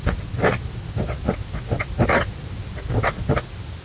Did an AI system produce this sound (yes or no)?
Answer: no